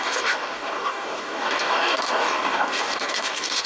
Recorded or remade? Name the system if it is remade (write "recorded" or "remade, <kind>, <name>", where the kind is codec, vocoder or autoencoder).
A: remade, codec, DAC